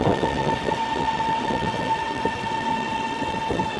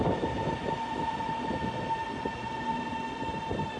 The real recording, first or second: second